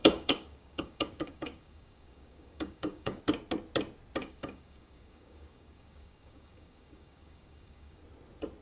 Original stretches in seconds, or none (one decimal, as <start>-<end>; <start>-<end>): 3.2-4.2; 8.0-8.6